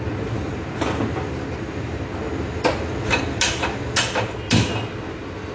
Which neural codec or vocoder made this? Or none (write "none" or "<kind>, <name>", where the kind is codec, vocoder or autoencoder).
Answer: none